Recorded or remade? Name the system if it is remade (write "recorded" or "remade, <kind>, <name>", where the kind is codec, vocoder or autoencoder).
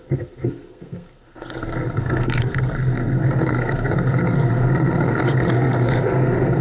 remade, codec, SNAC